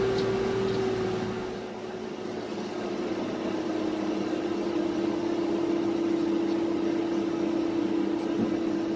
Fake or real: real